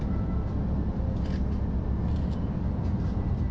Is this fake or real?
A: real